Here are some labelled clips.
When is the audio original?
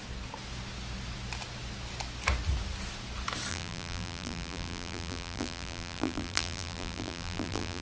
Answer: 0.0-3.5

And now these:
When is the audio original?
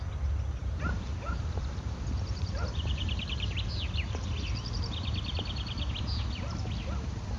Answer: 0.0-0.6; 3.6-7.4